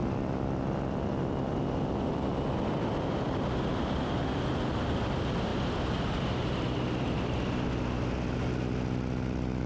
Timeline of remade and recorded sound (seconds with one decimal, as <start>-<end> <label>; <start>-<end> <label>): 0.0-0.6 remade; 0.6-3.7 recorded; 3.7-5.0 remade; 5.0-5.5 recorded; 5.5-6.5 remade; 6.5-9.7 recorded